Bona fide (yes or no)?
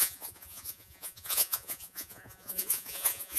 no